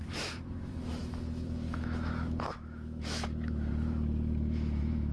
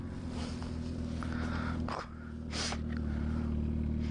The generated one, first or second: first